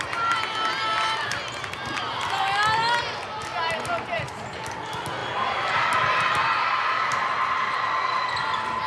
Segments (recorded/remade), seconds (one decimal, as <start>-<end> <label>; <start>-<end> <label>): 0.0-3.5 recorded; 3.5-4.6 remade; 4.6-5.2 recorded; 5.2-5.7 remade; 5.7-8.9 recorded